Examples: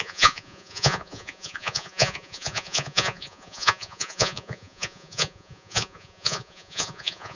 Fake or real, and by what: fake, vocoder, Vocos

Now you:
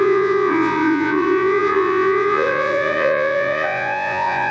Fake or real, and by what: fake, vocoder, Vocos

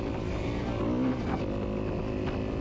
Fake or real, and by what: real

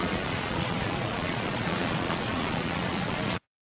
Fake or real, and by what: fake, vocoder, Vocos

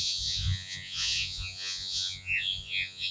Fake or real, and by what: fake, vocoder, Vocos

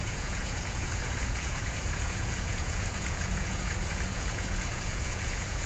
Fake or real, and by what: fake, vocoder, Vocos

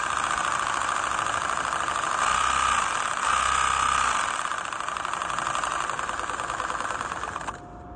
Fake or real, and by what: real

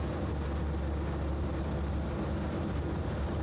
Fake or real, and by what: real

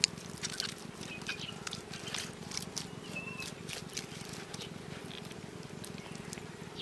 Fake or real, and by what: real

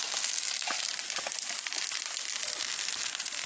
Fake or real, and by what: real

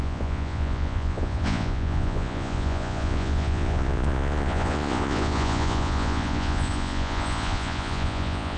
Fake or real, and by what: fake, vocoder, Vocos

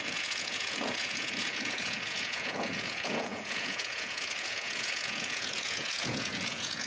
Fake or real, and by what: fake, vocoder, Vocos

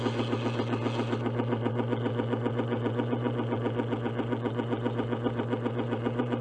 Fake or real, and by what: fake, vocoder, Vocos